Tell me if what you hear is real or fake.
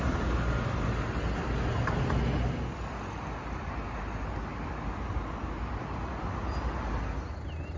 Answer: real